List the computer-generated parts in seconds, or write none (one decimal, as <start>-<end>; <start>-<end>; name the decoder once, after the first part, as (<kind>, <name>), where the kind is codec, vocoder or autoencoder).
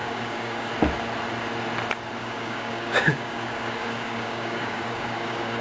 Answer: 0.0-0.7 (codec, DAC); 2.2-5.6